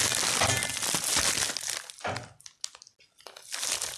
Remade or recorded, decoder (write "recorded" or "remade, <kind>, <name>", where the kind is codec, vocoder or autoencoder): recorded